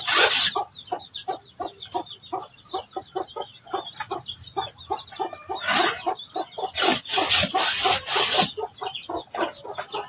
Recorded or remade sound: recorded